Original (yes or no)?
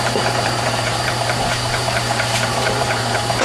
no